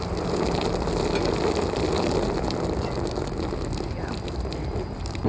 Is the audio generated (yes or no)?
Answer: no